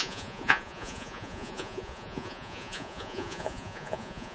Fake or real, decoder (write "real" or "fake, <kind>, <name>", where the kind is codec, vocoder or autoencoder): fake, vocoder, Vocos